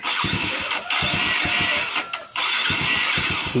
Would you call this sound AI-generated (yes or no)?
no